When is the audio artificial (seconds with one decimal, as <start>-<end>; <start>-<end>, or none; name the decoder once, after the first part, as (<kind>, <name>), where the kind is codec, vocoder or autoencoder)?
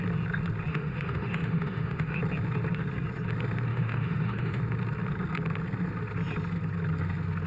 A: 0.7-2.2 (autoencoder, DAC-VAE); 3.7-4.6